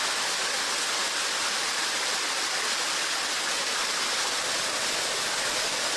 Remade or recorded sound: recorded